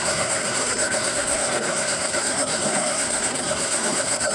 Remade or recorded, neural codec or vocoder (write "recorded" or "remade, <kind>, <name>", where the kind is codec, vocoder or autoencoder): remade, codec, SNAC